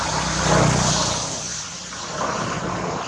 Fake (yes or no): no